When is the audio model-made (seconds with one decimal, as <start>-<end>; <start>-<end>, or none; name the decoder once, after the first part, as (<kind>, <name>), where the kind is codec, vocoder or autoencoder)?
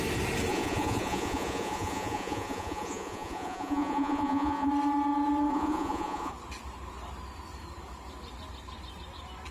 0.5-4.7 (vocoder, Vocos); 5.5-6.3